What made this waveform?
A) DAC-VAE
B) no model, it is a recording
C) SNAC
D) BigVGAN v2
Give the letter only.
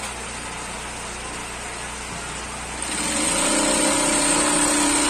B